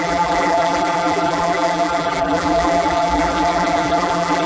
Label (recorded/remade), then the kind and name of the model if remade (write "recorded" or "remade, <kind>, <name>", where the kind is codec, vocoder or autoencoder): remade, vocoder, BigVGAN v2